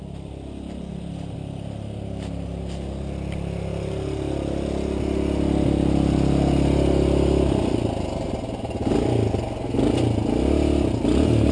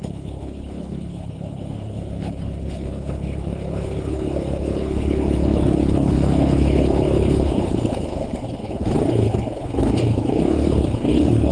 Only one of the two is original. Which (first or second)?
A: first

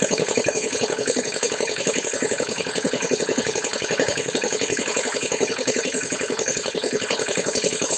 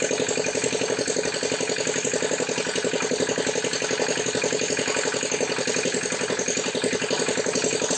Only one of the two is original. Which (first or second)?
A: second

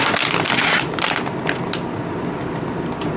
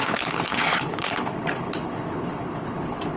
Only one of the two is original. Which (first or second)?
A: first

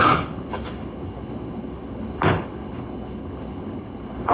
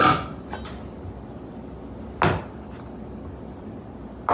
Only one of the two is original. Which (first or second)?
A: second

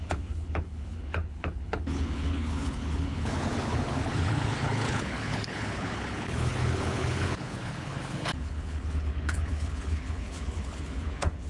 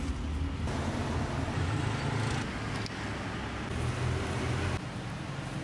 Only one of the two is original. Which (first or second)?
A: second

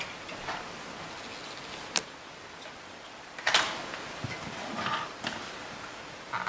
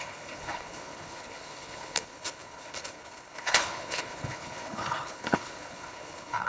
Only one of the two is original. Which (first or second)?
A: first